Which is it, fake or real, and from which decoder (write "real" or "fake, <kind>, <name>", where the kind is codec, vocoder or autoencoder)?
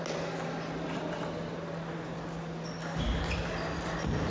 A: real